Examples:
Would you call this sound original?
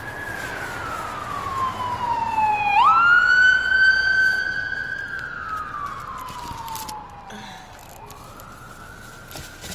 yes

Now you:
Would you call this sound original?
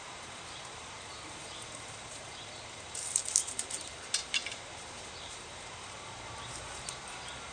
no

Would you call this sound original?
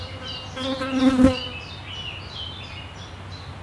yes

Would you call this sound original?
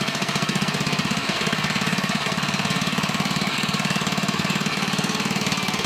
no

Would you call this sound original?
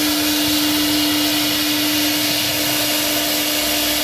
yes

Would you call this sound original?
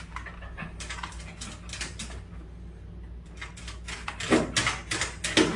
yes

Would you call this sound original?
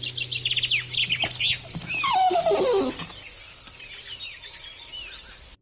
yes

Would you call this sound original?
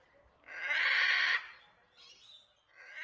yes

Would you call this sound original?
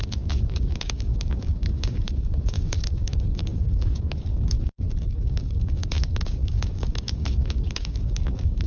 no